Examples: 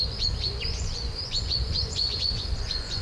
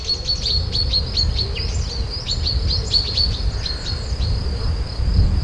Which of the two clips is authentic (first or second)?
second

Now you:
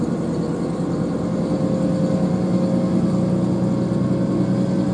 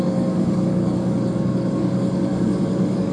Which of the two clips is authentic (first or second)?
first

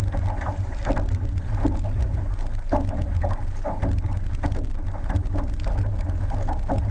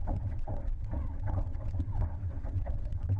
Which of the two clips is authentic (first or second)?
first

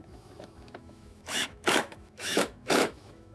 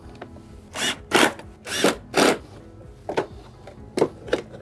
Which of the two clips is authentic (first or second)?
second